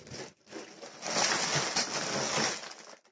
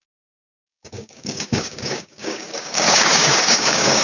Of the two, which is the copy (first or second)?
second